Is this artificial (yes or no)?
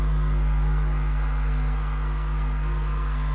yes